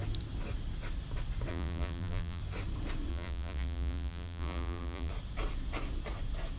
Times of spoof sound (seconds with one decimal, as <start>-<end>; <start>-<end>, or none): 1.5-2.4; 3.1-5.1